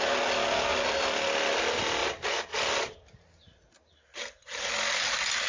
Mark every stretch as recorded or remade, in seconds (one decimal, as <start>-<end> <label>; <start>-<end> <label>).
0.0-5.5 recorded